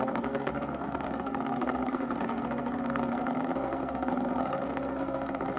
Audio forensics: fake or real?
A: fake